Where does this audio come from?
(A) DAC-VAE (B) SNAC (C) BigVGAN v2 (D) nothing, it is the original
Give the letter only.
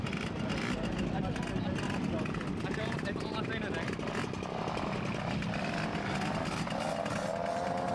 D